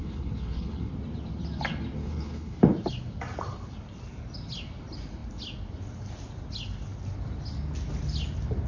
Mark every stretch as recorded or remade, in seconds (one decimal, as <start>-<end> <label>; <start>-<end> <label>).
0.0-0.9 remade; 0.9-2.0 recorded; 2.0-2.6 remade; 2.6-8.7 recorded